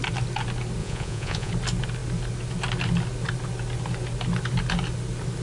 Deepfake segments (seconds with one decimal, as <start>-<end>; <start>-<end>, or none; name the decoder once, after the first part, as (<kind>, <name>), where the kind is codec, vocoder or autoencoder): 0.8-1.5 (vocoder, Vocos)